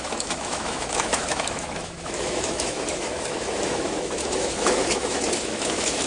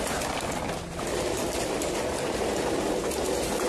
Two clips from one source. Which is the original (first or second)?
second